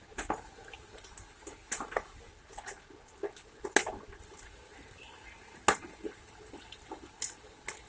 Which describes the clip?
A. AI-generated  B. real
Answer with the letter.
B